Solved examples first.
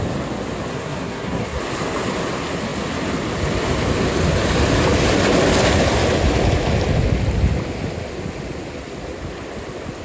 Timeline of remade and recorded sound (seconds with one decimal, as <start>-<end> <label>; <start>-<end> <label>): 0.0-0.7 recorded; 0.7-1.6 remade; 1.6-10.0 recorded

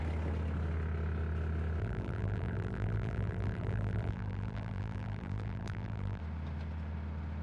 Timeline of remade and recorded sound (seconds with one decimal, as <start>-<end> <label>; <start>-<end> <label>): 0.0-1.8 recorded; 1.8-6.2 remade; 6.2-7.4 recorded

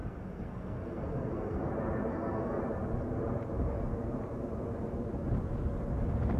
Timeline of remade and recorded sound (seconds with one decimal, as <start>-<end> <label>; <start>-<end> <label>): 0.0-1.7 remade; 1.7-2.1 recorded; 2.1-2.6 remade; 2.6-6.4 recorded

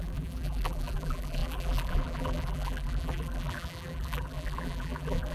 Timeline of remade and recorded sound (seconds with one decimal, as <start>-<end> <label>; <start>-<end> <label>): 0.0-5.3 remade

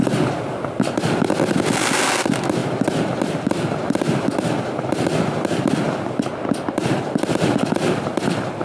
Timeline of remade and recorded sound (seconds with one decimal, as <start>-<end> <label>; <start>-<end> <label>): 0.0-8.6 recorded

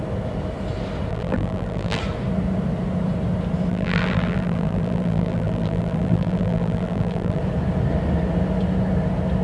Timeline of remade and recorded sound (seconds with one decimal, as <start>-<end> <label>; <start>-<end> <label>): 0.0-1.1 recorded; 1.1-2.0 remade; 2.0-3.7 recorded; 3.7-7.4 remade; 7.4-9.4 recorded